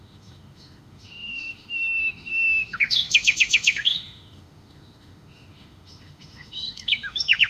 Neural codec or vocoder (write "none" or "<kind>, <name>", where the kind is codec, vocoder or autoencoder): autoencoder, DAC-VAE